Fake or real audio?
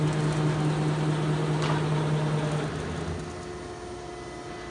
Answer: real